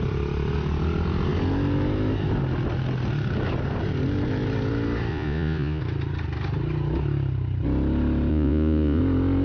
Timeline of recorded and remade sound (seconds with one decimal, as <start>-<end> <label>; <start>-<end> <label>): 0.0-5.1 recorded; 5.1-5.8 remade; 5.8-8.3 recorded; 8.3-9.0 remade; 9.0-9.4 recorded